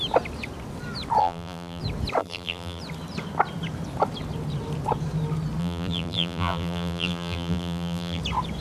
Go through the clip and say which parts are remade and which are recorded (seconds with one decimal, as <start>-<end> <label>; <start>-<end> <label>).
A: 0.0-1.2 recorded; 1.2-1.8 remade; 1.8-2.2 recorded; 2.2-2.8 remade; 2.8-5.6 recorded; 5.6-8.2 remade; 8.2-8.6 recorded